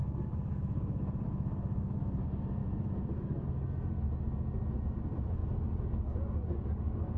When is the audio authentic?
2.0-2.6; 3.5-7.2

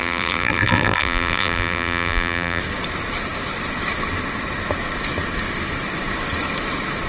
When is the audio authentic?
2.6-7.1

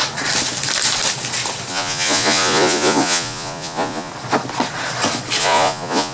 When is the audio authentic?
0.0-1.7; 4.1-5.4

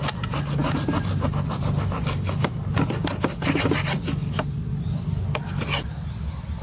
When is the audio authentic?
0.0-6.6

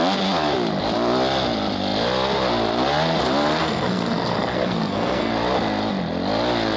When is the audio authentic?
0.0-3.6; 5.3-6.8

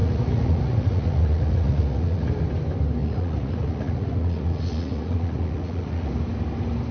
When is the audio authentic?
2.3-3.0; 6.1-6.9

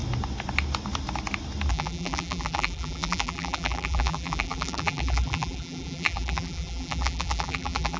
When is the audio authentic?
0.0-1.7

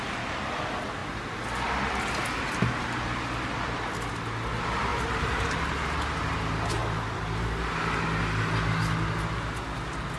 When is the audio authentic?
0.0-4.9; 6.1-6.8; 8.2-10.2